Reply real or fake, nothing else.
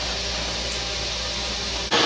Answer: real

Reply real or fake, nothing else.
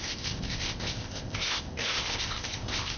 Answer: fake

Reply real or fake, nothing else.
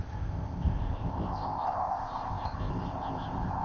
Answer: fake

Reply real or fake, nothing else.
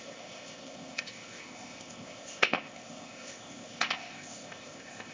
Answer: fake